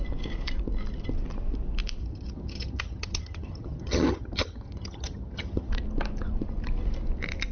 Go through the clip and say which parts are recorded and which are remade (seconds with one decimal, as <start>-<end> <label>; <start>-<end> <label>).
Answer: 0.0-2.0 recorded; 2.0-5.7 remade; 5.7-7.5 recorded